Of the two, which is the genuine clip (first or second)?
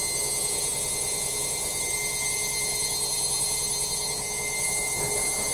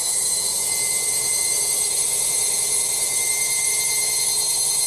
first